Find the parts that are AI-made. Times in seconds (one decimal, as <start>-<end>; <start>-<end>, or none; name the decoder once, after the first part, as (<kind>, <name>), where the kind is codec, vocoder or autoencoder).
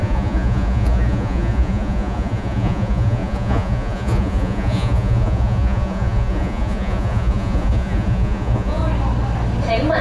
0.0-8.8 (vocoder, Vocos)